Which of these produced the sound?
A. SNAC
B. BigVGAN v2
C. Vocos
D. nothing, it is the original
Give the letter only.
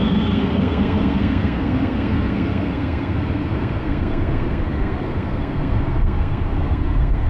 A